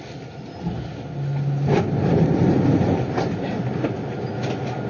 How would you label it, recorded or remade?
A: recorded